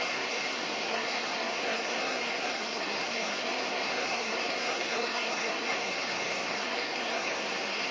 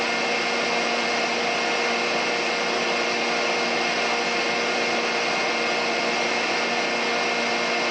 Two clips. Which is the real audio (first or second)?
second